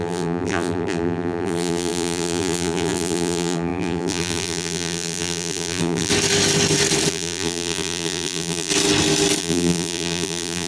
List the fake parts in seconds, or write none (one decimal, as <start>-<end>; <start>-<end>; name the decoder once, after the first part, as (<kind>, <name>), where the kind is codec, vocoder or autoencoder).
0.0-6.1 (vocoder, BigVGAN v2); 7.1-8.7; 9.4-10.7